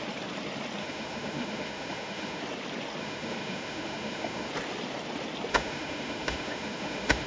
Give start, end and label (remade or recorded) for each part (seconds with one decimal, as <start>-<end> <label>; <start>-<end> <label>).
0.0-0.8 recorded; 0.8-2.4 remade; 2.4-3.0 recorded; 3.0-4.5 remade; 4.5-5.5 recorded; 5.5-7.3 remade